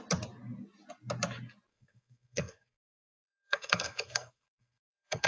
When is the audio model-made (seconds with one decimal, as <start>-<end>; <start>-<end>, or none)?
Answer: 1.7-5.3